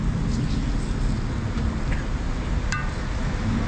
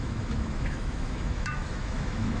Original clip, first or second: first